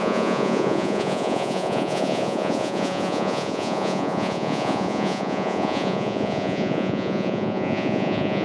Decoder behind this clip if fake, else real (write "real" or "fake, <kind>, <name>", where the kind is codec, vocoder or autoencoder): fake, vocoder, Vocos